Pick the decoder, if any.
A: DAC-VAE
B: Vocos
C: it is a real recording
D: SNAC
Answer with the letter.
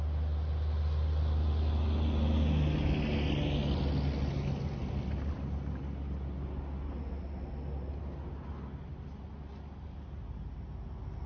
C